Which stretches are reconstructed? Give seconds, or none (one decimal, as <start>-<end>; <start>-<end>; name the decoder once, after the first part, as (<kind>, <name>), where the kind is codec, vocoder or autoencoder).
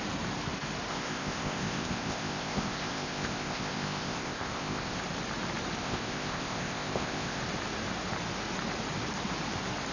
0.9-5.0 (codec, ZipCodec); 5.8-7.4